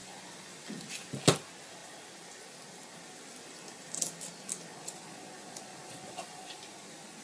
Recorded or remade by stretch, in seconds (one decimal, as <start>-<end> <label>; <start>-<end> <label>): 0.0-0.6 remade; 0.6-4.7 recorded; 4.7-7.2 remade